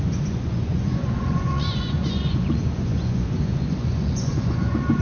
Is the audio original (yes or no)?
no